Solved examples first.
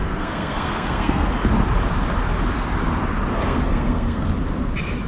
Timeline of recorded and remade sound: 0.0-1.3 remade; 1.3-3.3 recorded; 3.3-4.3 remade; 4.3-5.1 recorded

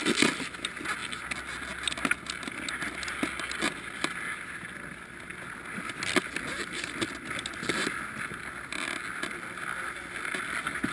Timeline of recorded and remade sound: 0.0-10.9 recorded